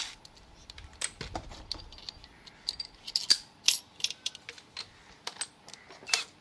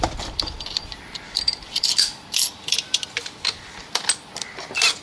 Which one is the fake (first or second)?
second